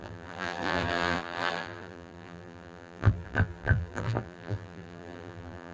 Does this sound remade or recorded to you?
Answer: remade